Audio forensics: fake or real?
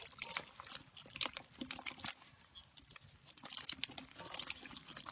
real